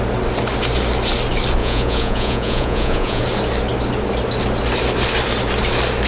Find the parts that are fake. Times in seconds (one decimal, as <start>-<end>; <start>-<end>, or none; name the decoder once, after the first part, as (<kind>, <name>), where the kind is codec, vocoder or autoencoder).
1.6-3.2 (vocoder, Vocos)